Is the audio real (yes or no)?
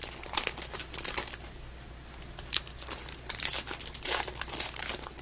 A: yes